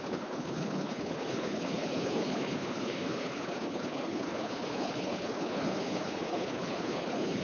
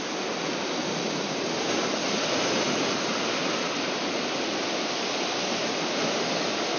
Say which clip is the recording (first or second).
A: second